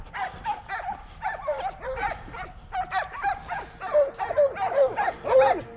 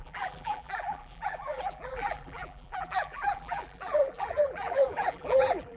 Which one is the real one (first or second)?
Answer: first